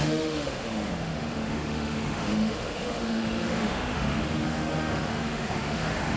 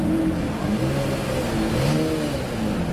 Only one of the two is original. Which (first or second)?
second